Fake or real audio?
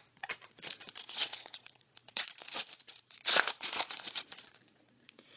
fake